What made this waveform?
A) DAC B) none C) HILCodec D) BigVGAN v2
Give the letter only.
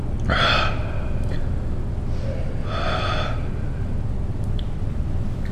B